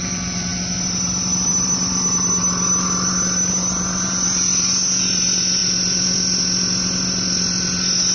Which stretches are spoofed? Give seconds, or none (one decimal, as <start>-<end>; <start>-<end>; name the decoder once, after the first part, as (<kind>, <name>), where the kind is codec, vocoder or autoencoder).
none